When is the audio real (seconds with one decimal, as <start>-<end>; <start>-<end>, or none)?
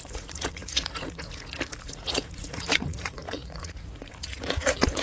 none